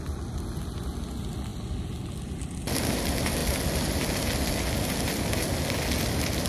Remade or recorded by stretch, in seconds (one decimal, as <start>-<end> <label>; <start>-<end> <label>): 0.0-6.5 recorded